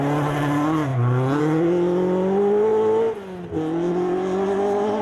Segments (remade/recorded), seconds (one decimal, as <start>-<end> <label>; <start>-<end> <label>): 0.0-5.0 recorded